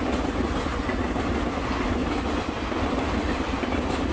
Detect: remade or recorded recorded